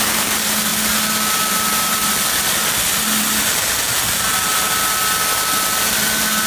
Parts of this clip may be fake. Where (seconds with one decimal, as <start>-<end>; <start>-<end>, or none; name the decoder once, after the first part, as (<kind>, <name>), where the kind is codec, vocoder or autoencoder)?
none